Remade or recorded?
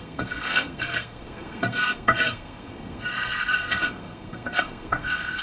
remade